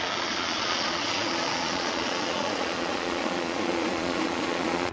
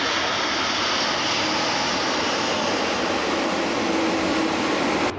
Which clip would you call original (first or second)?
second